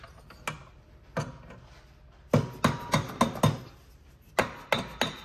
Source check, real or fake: real